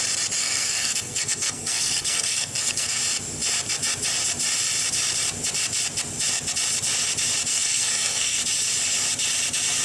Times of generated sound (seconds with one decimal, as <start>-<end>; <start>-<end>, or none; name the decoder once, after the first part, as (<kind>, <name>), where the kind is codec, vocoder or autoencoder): 0.4-3.0 (codec, SNAC); 7.5-8.4